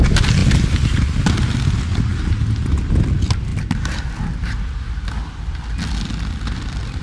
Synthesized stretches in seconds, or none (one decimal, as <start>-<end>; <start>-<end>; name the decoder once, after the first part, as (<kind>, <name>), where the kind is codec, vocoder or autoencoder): none

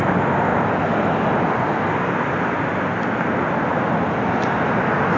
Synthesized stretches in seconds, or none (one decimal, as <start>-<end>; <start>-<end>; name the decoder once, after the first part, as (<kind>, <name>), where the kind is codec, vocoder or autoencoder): none

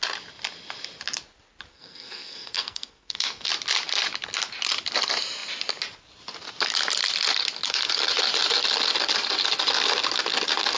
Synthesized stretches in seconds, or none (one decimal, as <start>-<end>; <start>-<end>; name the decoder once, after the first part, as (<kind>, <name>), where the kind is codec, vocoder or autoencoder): 1.7-3.5 (codec, SNAC)

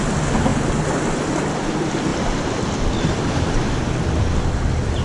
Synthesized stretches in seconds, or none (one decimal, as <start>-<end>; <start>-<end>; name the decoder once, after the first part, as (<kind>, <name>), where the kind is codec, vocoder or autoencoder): none

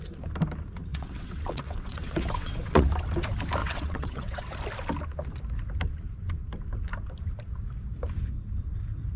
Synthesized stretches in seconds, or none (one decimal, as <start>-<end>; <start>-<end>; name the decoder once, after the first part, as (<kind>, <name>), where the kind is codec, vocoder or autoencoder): 0.9-2.9 (vocoder, WaveNeXt); 3.6-4.5

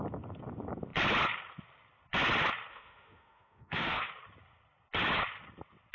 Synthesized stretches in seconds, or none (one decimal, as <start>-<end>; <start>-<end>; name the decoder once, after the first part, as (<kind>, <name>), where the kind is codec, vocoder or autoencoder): 2.7-4.1 (autoencoder, DAC-VAE)

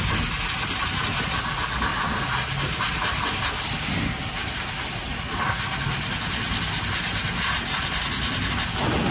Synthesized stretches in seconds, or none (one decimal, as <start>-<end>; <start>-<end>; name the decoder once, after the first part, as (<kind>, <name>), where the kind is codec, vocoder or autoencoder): none

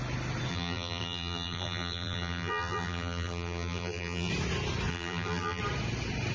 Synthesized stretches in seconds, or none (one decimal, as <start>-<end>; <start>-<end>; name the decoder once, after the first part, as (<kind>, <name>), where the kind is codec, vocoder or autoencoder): 0.5-4.3 (vocoder, BigVGAN v2); 4.9-5.6